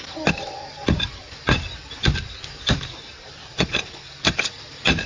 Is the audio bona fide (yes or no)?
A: no